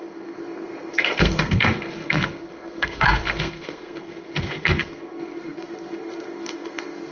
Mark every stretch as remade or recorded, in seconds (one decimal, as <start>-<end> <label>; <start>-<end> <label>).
0.0-7.1 remade